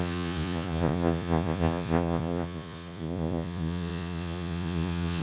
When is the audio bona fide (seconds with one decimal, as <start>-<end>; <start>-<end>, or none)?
none